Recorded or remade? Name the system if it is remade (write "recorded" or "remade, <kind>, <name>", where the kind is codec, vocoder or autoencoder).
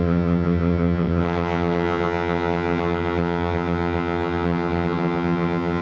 remade, vocoder, HiFi-GAN